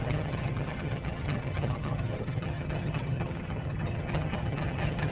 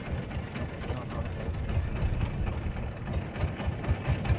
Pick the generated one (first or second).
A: first